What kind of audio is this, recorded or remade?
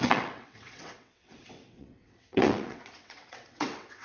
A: remade